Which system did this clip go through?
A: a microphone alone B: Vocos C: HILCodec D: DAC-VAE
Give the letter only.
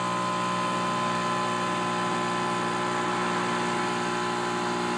A